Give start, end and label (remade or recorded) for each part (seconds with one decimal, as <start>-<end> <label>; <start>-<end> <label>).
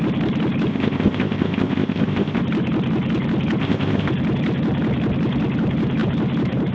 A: 0.0-0.7 recorded; 0.7-2.4 remade; 2.4-3.6 recorded; 3.6-4.1 remade; 4.1-6.7 recorded